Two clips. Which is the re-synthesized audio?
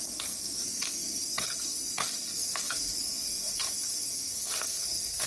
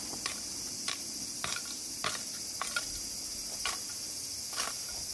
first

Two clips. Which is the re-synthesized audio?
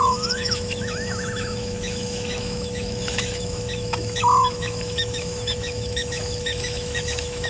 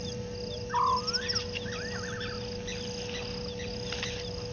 first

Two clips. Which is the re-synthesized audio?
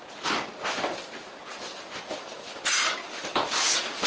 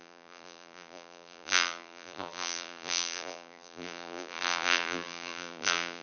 second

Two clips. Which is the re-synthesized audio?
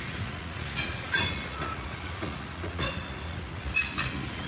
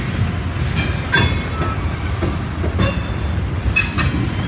first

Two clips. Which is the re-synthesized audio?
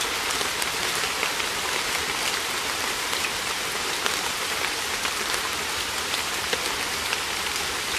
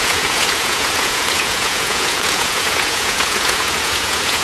second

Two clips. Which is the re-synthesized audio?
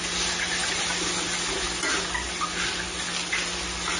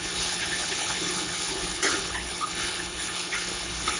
second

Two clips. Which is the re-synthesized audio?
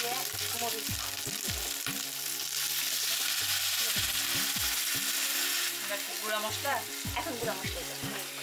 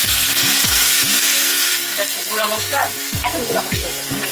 second